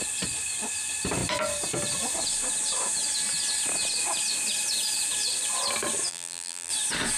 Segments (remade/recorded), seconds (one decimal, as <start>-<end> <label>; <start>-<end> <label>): 0.0-6.1 recorded; 6.1-6.7 remade; 6.7-7.2 recorded